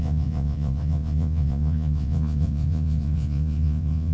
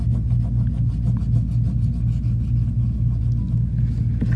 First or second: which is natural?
second